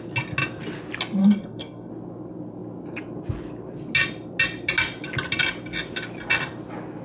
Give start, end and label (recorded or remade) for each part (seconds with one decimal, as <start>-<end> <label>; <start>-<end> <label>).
0.0-1.2 recorded; 1.2-1.9 remade; 1.9-7.0 recorded